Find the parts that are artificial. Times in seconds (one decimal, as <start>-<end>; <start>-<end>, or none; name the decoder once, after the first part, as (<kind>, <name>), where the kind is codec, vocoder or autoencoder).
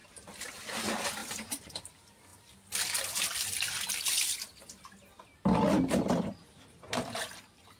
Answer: 0.0-0.5 (vocoder, BigVGAN v2); 1.2-1.9; 6.4-7.8